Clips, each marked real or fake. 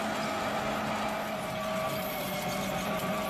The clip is real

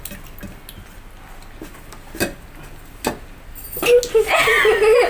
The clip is real